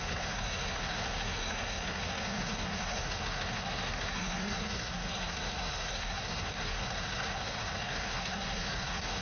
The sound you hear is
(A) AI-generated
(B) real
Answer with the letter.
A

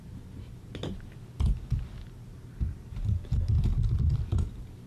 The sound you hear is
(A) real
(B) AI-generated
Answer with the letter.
A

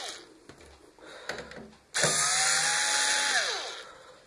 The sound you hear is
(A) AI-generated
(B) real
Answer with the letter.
B